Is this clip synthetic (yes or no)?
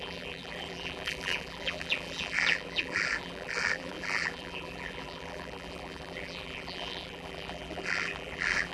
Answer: yes